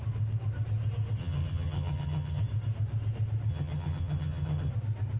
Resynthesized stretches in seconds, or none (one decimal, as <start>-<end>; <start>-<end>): 1.2-2.4; 3.5-4.7

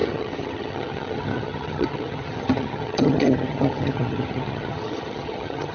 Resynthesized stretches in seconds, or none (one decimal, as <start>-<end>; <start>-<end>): 0.0-5.7

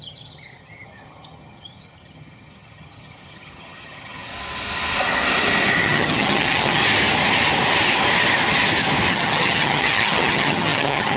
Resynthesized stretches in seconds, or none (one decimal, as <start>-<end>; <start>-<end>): 0.0-4.3; 5.8-6.8; 9.1-11.2

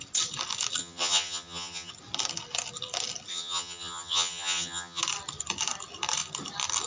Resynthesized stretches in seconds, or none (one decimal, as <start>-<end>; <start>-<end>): 0.8-1.9; 3.3-5.0